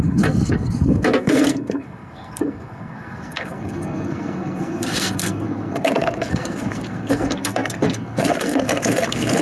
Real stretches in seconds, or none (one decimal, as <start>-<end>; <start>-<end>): none